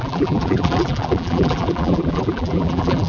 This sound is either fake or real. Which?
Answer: fake